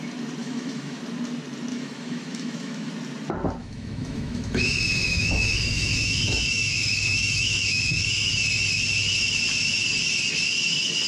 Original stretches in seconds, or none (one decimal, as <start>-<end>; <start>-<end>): 0.0-0.4; 1.0-1.7; 2.9-3.6; 8.3-11.1